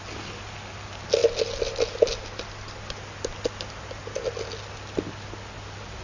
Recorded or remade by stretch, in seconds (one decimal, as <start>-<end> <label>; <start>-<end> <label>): 0.0-6.0 recorded